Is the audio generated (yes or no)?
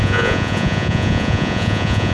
yes